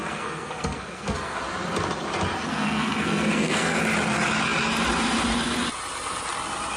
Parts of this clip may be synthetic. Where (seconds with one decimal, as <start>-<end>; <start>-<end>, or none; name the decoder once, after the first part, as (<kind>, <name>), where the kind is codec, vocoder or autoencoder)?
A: 0.0-1.4 (codec, SNAC); 2.5-3.8